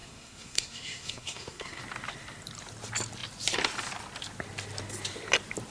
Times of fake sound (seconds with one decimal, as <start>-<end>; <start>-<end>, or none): 0.0-1.8